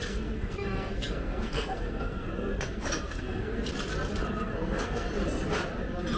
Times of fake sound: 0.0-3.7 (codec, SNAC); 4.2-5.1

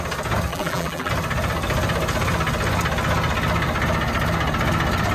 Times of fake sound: 0.5-1.1 (vocoder, BigVGAN v2)